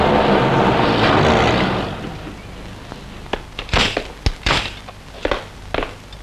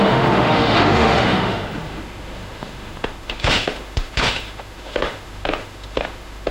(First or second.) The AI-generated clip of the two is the second